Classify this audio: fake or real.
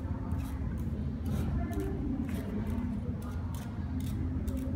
real